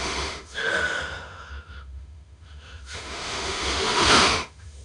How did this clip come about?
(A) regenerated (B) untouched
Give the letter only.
A